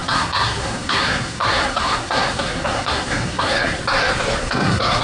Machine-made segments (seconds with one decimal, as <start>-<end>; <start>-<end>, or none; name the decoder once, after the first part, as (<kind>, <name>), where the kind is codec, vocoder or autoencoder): 0.0-3.8 (codec, SNAC); 4.4-5.0